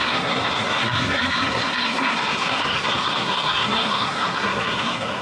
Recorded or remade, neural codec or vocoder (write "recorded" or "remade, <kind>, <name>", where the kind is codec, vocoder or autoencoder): remade, codec, SNAC